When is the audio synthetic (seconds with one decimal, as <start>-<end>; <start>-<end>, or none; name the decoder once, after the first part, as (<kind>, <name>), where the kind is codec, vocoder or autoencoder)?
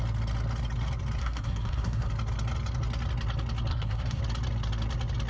1.2-2.1 (codec, SNAC); 3.7-4.2